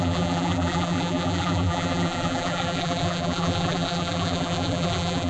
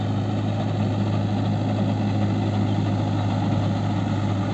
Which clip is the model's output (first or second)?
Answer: first